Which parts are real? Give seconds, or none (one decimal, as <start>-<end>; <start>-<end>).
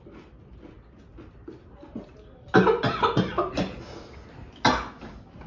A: 0.0-5.5